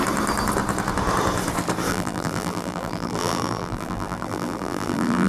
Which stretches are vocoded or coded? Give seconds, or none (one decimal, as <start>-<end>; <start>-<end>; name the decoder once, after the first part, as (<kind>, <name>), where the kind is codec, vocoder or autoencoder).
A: 1.9-5.3 (vocoder, BigVGAN v2)